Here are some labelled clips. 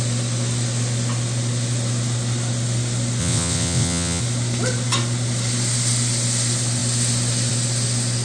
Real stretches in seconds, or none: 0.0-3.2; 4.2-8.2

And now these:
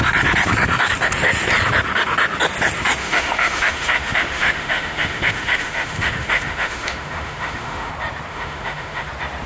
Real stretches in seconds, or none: 0.0-3.0; 7.9-8.3; 9.1-9.5

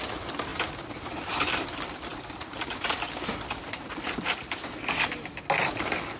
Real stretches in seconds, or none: 0.0-6.2

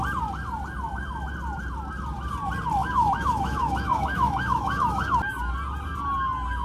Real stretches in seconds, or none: 0.0-2.8; 5.2-6.6